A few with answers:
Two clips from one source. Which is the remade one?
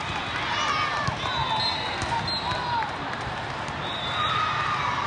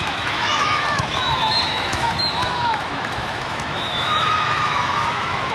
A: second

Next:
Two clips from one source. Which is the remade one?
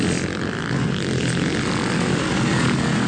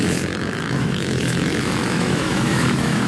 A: second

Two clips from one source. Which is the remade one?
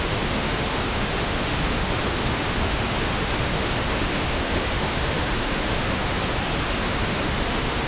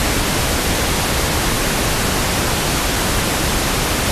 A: first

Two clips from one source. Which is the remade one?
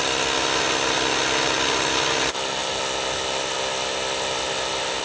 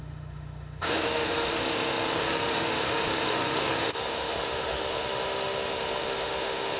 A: second